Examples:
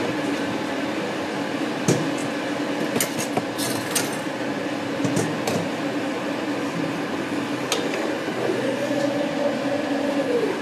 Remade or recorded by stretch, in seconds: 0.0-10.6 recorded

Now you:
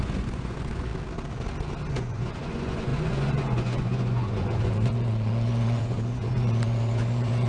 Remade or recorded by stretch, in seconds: 0.0-0.9 remade; 0.9-1.9 recorded; 1.9-7.5 remade

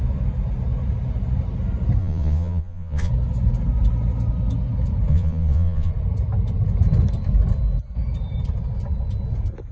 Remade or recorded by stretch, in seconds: 0.0-2.0 recorded; 2.0-3.1 remade; 3.1-5.1 recorded; 5.1-5.9 remade; 5.9-9.7 recorded

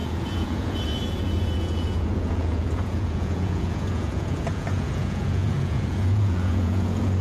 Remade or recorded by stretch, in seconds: 0.0-7.2 remade

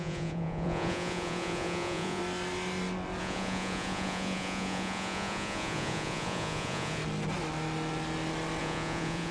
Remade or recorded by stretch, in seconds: 0.0-2.2 remade; 2.2-3.2 recorded; 3.2-7.0 remade; 7.0-8.6 recorded; 8.6-9.3 remade

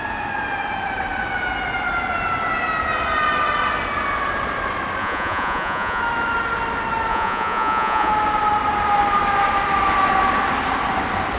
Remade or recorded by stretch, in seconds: 0.0-5.0 recorded; 5.0-6.0 remade; 6.0-7.1 recorded; 7.1-8.1 remade; 8.1-11.4 recorded

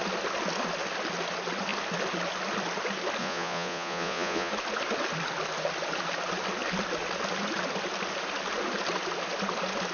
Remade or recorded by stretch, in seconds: 0.0-3.2 recorded; 3.2-4.5 remade; 4.5-9.9 recorded

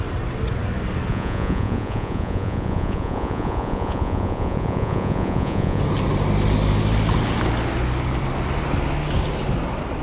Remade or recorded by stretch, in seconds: 0.0-1.1 recorded; 1.1-5.8 remade; 5.8-10.0 recorded